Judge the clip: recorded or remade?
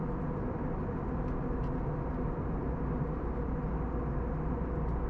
recorded